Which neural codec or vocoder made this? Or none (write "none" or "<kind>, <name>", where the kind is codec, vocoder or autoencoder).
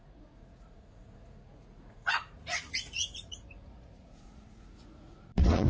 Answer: vocoder, Vocos